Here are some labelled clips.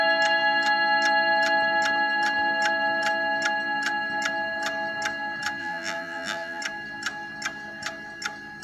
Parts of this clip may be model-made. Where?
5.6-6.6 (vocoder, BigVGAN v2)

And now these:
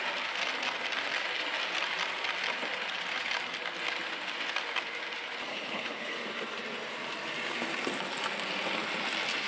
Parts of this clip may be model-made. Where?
5.5-6.2 (codec, HILCodec)